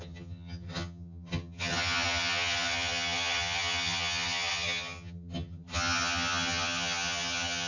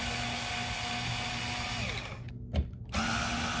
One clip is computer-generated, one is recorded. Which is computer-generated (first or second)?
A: first